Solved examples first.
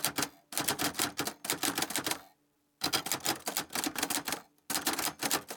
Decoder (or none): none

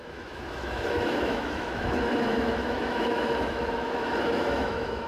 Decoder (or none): autoencoder, DAC-VAE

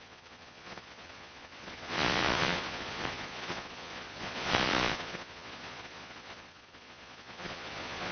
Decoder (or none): vocoder, Vocos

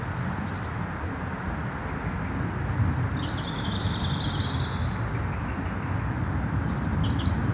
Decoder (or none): none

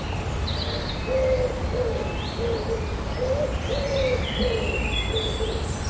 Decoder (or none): none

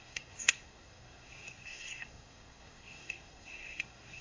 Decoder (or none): codec, SNAC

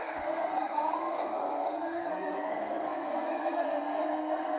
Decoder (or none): codec, SNAC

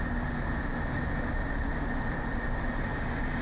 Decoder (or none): none